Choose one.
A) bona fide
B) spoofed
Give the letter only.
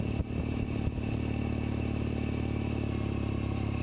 A